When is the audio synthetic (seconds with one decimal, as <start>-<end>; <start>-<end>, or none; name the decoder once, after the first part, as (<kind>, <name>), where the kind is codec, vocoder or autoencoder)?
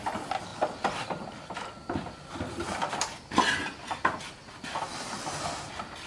0.0-6.1 (vocoder, BigVGAN v2)